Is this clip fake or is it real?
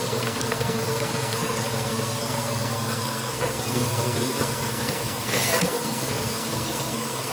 fake